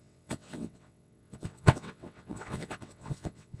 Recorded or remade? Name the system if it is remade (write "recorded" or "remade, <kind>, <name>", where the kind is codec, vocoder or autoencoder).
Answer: remade, vocoder, WaveNeXt